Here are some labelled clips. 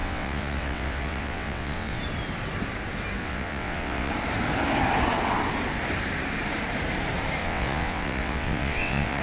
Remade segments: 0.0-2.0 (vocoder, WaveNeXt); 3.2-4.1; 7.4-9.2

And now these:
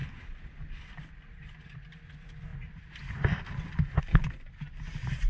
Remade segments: none

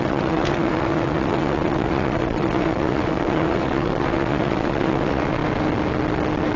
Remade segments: 0.0-5.4 (vocoder, WaveNeXt)

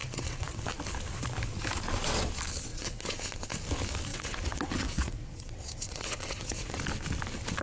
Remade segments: 0.0-0.6 (vocoder, WaveNeXt); 2.7-3.2; 4.1-6.8